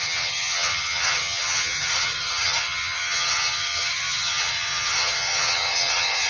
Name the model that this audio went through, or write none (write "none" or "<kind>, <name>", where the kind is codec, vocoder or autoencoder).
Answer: vocoder, HiFi-GAN